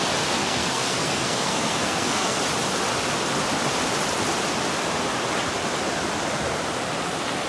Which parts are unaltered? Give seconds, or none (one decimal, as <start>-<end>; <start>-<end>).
0.0-0.4; 2.4-7.5